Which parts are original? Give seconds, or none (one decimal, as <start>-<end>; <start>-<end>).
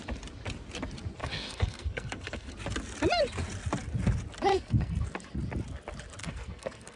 0.0-1.2; 2.5-4.5; 5.0-6.2